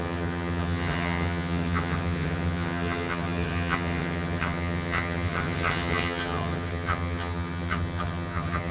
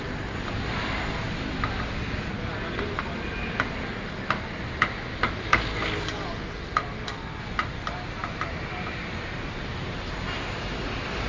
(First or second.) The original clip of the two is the second